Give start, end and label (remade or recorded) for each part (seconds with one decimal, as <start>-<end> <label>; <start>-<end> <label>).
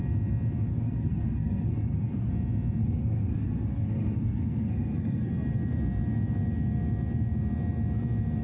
0.0-0.7 recorded; 0.7-2.3 remade; 2.3-2.8 recorded; 2.8-5.3 remade; 5.3-8.4 recorded